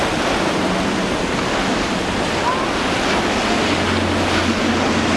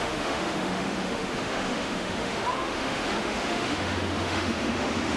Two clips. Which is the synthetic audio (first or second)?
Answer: second